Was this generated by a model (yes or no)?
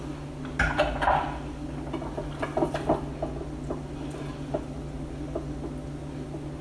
no